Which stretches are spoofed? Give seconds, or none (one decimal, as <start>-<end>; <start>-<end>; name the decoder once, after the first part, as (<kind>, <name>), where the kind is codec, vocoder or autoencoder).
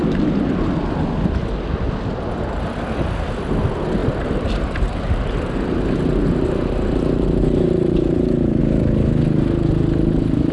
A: 4.0-8.6 (vocoder, BigVGAN v2)